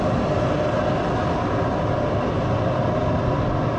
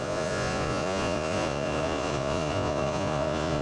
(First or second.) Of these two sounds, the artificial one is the second